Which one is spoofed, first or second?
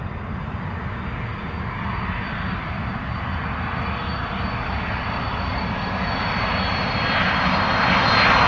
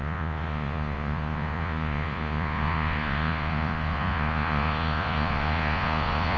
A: second